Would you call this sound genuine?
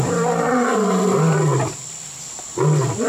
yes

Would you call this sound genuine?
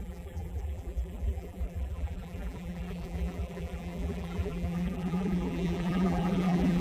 no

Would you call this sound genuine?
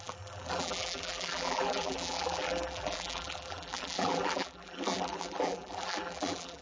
no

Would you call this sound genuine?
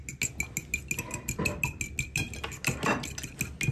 yes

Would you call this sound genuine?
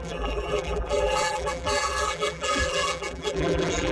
no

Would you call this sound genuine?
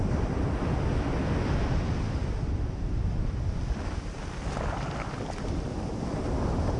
yes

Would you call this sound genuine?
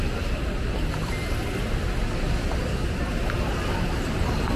yes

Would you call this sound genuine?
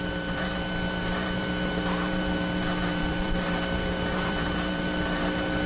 no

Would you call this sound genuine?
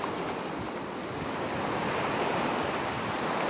yes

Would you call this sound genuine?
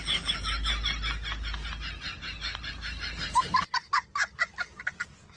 yes